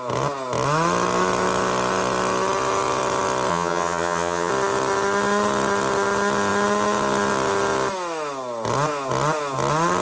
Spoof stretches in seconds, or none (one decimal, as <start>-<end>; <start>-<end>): 3.5-4.5